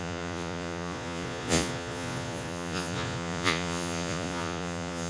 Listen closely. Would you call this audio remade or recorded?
remade